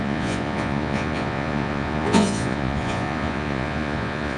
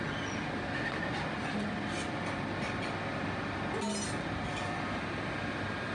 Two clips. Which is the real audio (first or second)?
second